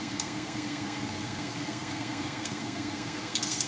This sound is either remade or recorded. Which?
remade